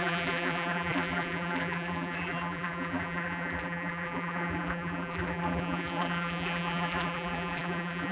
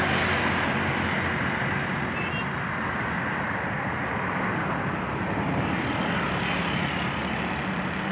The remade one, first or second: first